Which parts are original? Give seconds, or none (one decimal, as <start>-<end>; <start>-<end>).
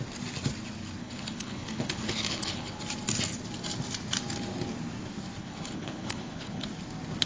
0.0-1.0; 2.8-5.4; 6.7-7.3